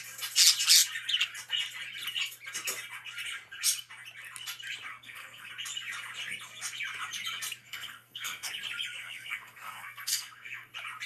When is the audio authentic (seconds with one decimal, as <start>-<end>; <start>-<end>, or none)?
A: 0.0-4.9; 5.5-7.6; 8.5-9.0; 10.7-11.1

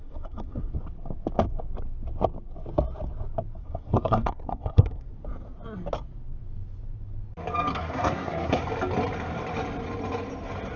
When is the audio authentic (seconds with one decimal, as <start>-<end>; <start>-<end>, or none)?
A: 0.7-3.6; 5.1-7.7; 8.6-10.8